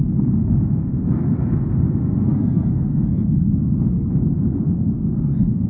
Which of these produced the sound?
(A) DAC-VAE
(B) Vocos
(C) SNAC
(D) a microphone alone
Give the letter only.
C